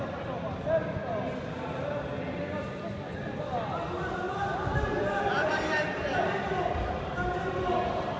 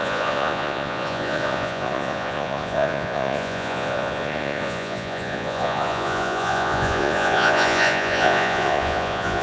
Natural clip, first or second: first